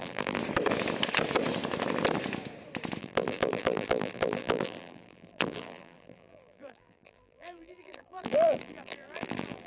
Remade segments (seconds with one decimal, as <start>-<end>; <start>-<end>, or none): 0.0-0.4; 3.0-9.7